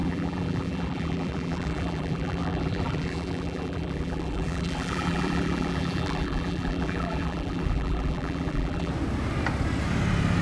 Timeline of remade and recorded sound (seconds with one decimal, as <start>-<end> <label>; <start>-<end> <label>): 0.0-8.9 remade; 8.9-10.4 recorded